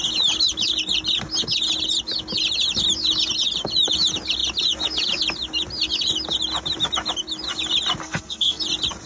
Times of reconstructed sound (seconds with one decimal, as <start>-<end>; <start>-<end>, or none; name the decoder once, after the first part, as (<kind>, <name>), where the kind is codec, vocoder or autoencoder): 8.0-8.6 (codec, SNAC)